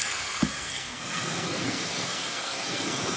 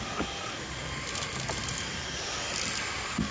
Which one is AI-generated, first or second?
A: first